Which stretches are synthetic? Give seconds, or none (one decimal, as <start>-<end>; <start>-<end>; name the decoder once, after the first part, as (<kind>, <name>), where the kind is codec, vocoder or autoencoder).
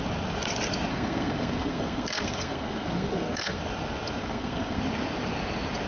0.9-3.6 (codec, SNAC); 4.2-4.8